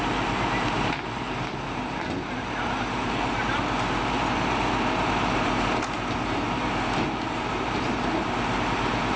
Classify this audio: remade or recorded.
remade